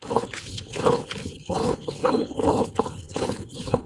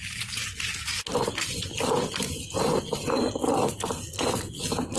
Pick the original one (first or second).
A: second